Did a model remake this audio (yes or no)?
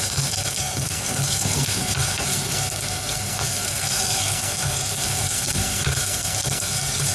yes